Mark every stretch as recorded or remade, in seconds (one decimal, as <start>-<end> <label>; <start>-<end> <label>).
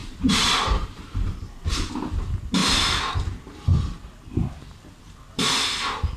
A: 0.0-1.9 remade; 1.9-6.2 recorded